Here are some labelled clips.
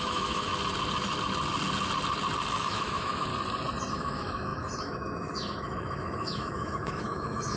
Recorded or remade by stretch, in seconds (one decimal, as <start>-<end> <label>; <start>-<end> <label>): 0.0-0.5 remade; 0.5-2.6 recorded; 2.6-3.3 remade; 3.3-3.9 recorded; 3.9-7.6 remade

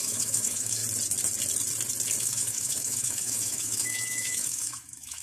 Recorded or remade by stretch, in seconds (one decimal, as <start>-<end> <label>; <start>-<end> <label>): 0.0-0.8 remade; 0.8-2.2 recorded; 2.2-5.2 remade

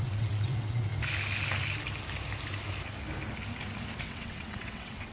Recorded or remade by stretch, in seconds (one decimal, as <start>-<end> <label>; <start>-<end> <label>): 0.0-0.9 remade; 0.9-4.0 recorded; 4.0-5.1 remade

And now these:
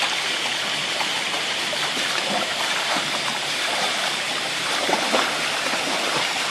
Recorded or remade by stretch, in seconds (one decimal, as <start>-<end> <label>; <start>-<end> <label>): 0.0-0.8 recorded; 0.8-4.7 remade; 4.7-6.5 recorded

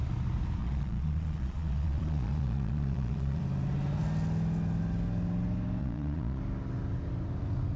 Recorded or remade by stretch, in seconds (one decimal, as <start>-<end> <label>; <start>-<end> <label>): 0.0-0.6 recorded; 0.6-3.4 remade; 3.4-5.8 recorded; 5.8-6.4 remade; 6.4-7.8 recorded

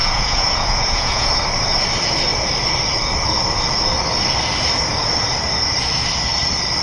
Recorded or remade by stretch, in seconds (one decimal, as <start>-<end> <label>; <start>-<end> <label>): 0.0-1.3 remade; 1.3-6.8 recorded

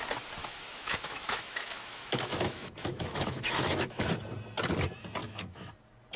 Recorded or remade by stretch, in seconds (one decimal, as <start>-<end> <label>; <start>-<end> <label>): 0.0-0.4 recorded; 0.4-4.1 remade; 4.1-5.2 recorded; 5.2-5.7 remade; 5.7-6.2 recorded

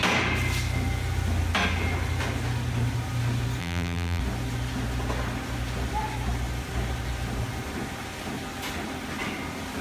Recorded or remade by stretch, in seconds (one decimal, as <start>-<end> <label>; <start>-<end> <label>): 0.0-3.6 recorded; 3.6-4.2 remade; 4.2-9.8 recorded